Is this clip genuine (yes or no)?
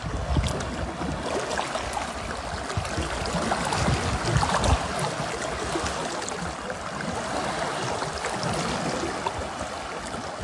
yes